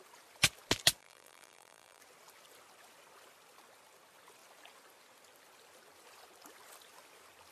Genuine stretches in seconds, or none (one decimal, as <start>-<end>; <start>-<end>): 0.0-1.0; 2.0-7.5